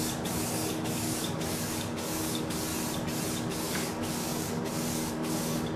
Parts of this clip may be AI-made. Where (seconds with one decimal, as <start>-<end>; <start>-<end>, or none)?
0.0-2.7; 3.3-5.8